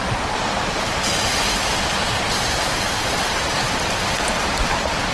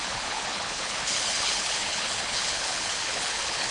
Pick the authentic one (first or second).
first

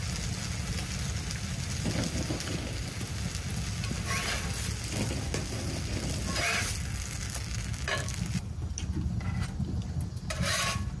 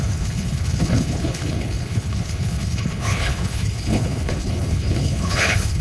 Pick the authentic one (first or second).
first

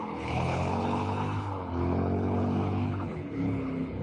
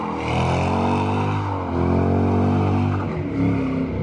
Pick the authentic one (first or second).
second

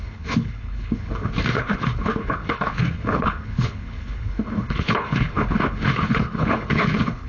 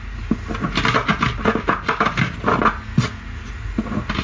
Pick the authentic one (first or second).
second